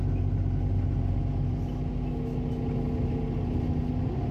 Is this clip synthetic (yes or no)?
no